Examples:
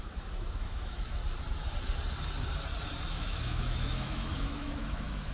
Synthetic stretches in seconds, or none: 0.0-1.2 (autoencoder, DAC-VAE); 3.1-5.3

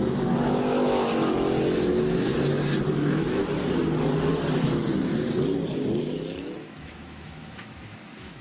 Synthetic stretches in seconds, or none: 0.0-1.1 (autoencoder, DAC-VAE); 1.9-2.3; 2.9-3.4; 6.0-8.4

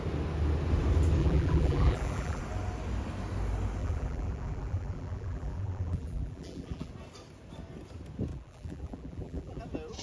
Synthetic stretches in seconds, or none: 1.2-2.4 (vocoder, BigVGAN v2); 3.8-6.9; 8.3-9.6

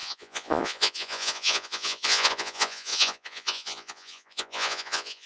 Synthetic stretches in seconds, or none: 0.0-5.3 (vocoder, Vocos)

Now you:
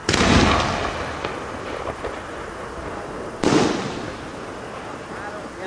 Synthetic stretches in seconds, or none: none

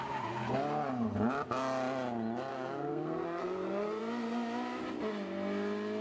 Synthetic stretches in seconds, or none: 2.5-4.0 (codec, SNAC)